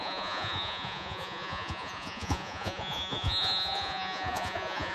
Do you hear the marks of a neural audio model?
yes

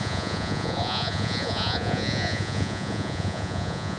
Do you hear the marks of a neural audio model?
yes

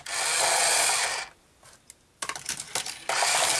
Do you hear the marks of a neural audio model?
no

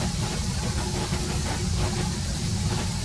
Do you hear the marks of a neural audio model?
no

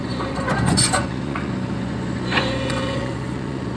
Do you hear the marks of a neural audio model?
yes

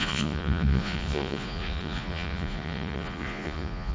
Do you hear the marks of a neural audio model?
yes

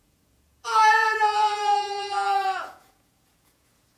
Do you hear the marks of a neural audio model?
yes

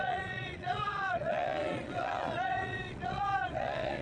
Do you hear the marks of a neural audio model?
yes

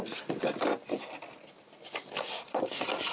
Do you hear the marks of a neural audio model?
no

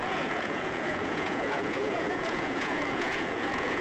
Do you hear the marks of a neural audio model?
yes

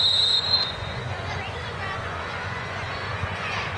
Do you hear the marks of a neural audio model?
yes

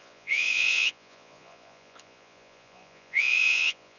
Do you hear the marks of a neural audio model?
yes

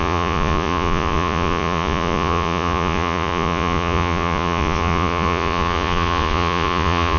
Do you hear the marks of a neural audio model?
yes